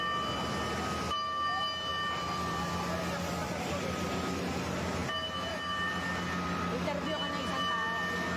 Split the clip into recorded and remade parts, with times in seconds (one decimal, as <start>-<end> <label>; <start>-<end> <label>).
0.0-1.9 recorded; 1.9-2.6 remade; 2.6-3.4 recorded; 3.4-4.1 remade; 4.1-8.4 recorded